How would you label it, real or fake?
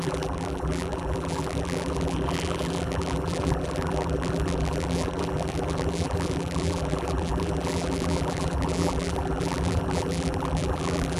fake